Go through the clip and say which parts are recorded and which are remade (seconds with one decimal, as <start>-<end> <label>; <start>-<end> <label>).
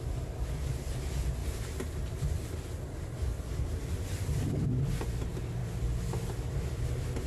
0.0-7.3 recorded